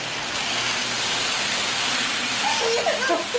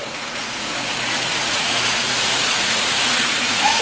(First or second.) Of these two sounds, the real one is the first